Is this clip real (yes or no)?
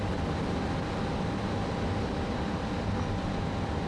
yes